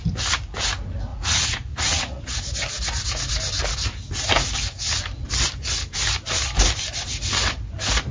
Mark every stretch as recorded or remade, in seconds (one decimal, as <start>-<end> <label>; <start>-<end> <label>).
0.0-1.1 recorded; 1.1-2.2 remade; 2.2-8.1 recorded